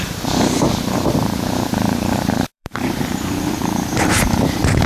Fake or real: fake